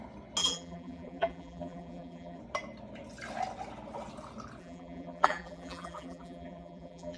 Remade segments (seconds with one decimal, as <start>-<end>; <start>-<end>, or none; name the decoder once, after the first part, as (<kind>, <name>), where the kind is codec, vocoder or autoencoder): 0.4-2.4 (vocoder, BigVGAN v2); 4.6-7.2